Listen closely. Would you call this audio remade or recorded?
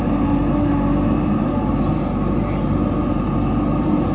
recorded